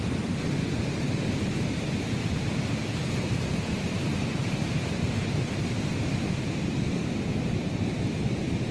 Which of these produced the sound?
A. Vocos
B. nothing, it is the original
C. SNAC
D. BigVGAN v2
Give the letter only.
D